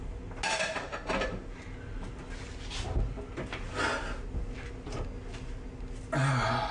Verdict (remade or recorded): recorded